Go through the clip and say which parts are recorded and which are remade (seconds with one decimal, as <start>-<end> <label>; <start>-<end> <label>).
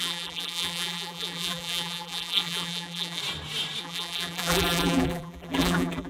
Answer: 0.0-3.2 remade; 3.2-3.8 recorded; 3.8-6.1 remade